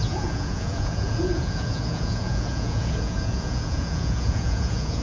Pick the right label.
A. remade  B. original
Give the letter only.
A